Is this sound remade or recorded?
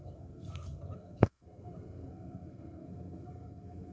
remade